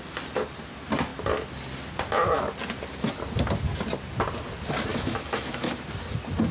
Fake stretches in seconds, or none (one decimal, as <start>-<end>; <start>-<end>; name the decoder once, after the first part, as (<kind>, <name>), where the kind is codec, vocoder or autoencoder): 4.9-5.7 (autoencoder, DAC-VAE)